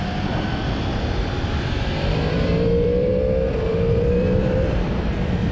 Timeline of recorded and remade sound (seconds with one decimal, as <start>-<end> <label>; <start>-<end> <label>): 0.0-3.1 remade; 3.1-3.7 recorded; 3.7-5.5 remade